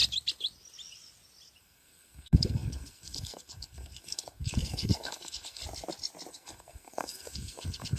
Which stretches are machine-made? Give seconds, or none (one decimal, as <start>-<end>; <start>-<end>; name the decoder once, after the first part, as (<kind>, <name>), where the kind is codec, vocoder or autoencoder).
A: 1.6-5.6 (codec, SNAC); 6.3-8.0